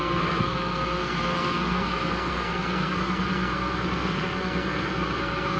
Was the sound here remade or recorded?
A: remade